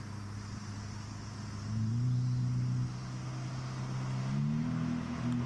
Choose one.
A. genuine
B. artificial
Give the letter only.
A